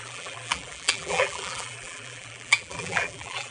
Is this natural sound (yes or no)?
no